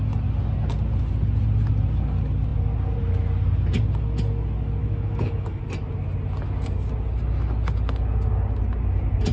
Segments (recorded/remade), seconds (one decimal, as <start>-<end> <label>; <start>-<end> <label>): 0.0-4.8 recorded; 4.8-5.6 remade; 5.6-9.3 recorded